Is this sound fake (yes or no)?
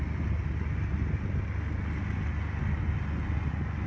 no